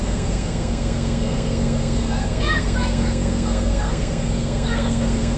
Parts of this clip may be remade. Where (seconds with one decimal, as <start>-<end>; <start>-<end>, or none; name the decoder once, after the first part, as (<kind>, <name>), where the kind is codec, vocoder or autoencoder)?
0.0-5.4 (codec, SNAC)